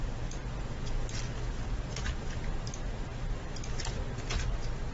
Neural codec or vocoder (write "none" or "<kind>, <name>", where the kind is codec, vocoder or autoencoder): vocoder, BigVGAN v2